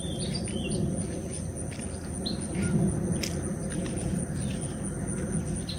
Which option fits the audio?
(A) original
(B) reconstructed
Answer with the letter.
A